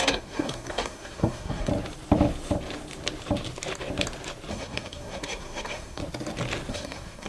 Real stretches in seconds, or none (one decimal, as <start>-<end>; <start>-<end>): 1.7-4.5; 6.0-6.7